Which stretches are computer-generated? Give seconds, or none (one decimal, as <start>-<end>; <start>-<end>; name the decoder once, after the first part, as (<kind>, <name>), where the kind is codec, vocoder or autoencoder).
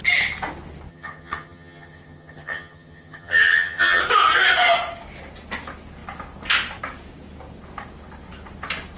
0.9-4.0 (vocoder, HiFi-GAN)